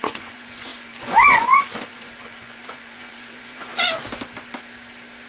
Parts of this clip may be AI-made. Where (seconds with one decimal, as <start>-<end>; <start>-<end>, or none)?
0.0-3.7